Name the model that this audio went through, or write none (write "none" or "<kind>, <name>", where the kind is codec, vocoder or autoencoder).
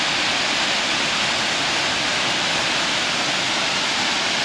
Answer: none